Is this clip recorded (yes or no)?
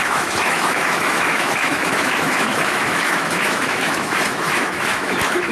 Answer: no